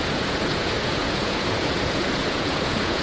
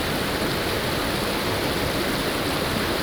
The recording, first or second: second